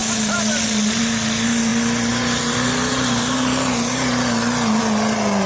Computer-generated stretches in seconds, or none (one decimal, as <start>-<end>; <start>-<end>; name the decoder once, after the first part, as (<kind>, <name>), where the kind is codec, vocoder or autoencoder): none